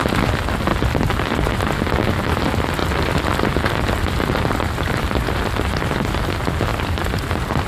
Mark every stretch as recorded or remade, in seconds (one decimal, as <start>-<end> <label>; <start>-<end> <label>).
0.0-0.7 recorded; 0.7-1.6 remade; 1.6-2.8 recorded; 2.8-6.2 remade; 6.2-6.7 recorded; 6.7-7.7 remade